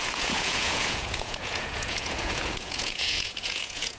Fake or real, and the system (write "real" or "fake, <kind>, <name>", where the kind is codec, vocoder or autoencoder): fake, vocoder, Vocos